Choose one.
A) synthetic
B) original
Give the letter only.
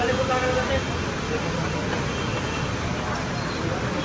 B